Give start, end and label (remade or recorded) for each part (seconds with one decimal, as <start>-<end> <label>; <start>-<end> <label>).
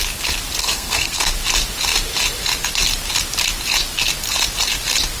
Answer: 0.0-0.6 recorded; 0.6-1.3 remade; 1.3-5.2 recorded